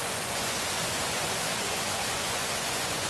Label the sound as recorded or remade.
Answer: remade